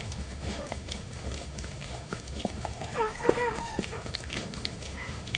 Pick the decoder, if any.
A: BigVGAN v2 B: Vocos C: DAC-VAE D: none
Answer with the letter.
C